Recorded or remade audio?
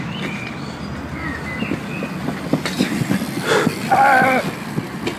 recorded